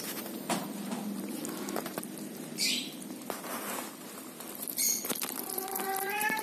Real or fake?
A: fake